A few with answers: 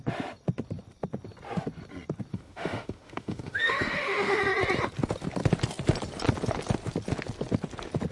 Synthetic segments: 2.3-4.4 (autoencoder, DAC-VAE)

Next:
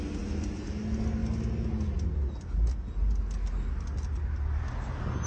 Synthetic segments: none

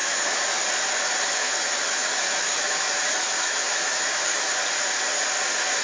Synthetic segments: 0.0-0.6 (autoencoder, DAC-VAE); 1.0-4.5